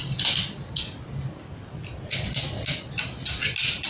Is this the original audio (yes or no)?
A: yes